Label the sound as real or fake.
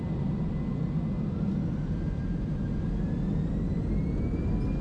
real